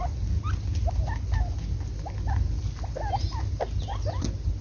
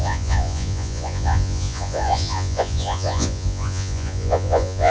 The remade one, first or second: second